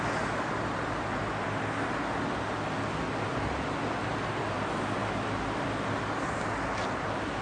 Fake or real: real